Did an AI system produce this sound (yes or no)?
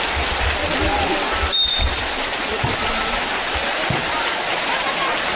no